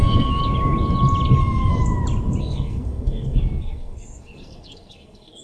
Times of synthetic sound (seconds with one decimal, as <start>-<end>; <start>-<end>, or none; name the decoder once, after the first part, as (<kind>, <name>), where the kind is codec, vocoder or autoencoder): 0.0-0.4 (codec, SNAC); 1.4-1.8; 2.4-5.4